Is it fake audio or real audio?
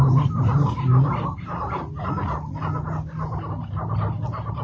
real